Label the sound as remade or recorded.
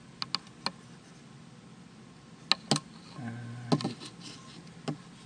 recorded